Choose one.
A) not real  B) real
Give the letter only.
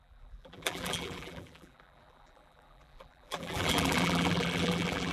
A